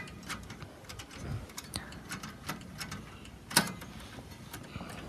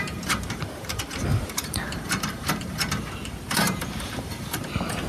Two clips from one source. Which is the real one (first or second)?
first